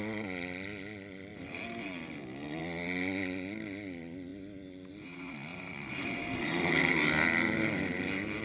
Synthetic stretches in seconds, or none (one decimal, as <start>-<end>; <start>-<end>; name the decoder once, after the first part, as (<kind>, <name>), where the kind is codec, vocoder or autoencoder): 1.3-2.6 (vocoder, BigVGAN v2); 5.5-7.1